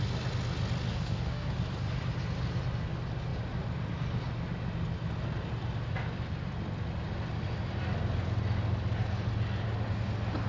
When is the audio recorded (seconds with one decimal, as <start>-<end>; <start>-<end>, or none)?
0.0-0.9; 1.5-10.5